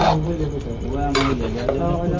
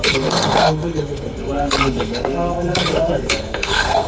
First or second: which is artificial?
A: second